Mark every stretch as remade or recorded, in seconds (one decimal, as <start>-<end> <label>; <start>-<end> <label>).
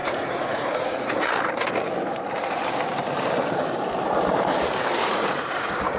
0.0-1.3 remade; 1.3-5.0 recorded; 5.0-6.0 remade